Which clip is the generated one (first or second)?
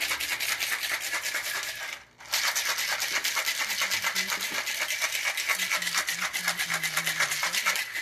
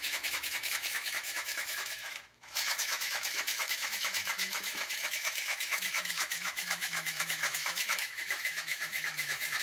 second